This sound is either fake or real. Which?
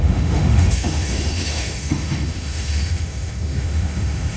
fake